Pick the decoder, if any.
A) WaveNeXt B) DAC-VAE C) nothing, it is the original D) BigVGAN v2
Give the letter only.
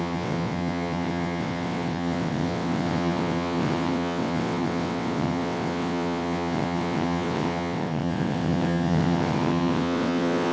A